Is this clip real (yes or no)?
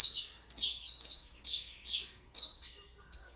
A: no